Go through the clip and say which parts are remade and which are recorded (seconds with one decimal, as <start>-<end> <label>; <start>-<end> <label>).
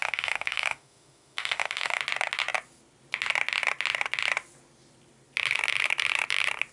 0.0-2.0 remade; 2.0-6.7 recorded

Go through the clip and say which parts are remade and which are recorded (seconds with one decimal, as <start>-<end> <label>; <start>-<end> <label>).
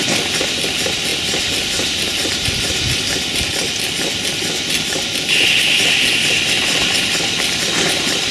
0.0-8.3 recorded